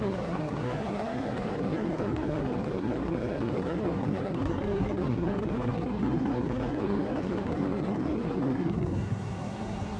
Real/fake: fake